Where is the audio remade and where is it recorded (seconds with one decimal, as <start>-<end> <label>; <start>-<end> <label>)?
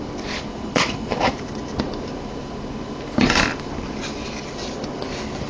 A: 0.0-0.5 recorded; 0.5-1.3 remade; 1.3-5.5 recorded